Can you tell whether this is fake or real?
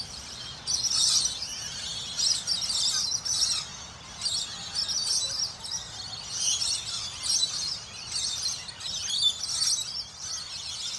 real